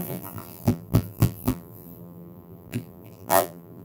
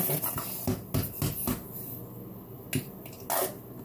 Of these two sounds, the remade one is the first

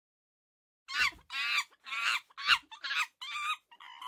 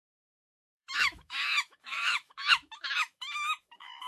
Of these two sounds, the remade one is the second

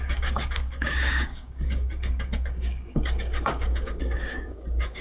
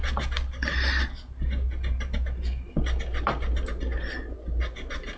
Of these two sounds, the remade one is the first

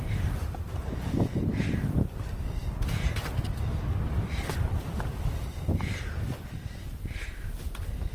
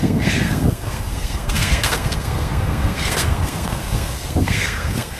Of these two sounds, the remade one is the second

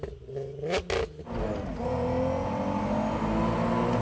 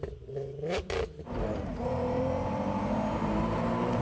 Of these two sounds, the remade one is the second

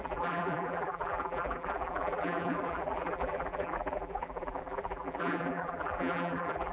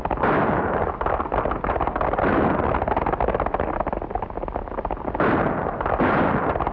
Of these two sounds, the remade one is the first